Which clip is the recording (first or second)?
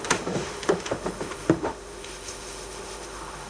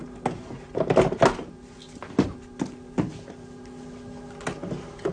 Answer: second